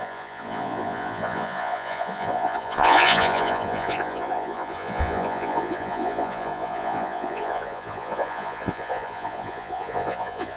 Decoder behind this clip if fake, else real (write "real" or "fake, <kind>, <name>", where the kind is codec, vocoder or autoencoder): fake, vocoder, Vocos